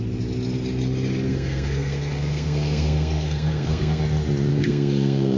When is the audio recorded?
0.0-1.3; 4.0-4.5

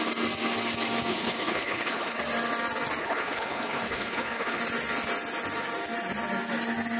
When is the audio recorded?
0.0-1.1; 2.2-3.0; 4.6-7.0

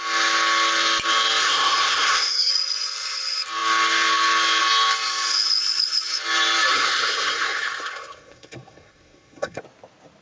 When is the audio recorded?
0.0-1.4; 2.5-6.7; 9.6-10.2

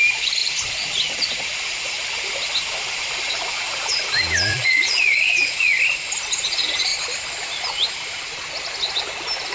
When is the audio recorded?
0.0-4.5; 5.7-9.5